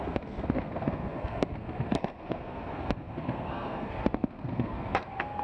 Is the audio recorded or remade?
remade